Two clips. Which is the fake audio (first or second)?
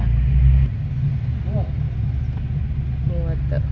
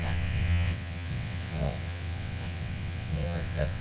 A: second